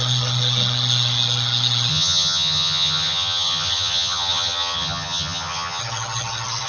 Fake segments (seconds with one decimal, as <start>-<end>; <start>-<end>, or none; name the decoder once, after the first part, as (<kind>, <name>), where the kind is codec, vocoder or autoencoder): 1.9-5.8 (vocoder, HiFi-GAN)